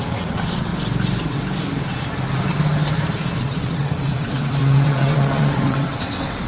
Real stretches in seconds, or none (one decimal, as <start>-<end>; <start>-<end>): 0.7-3.4